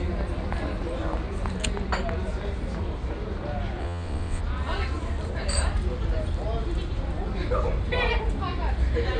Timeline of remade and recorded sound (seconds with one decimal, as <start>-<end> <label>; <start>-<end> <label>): 0.0-3.8 recorded; 3.8-4.4 remade; 4.4-9.2 recorded